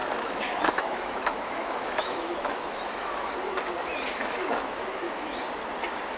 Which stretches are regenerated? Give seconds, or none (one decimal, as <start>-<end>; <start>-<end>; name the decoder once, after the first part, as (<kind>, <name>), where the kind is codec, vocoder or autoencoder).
0.0-3.3 (autoencoder, DAC-VAE); 4.2-5.4